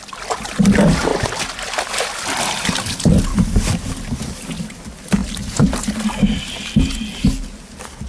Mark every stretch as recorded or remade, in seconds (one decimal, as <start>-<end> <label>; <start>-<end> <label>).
0.0-8.1 recorded